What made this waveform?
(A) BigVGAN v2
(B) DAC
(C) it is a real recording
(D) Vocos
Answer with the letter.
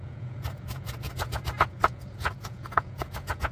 D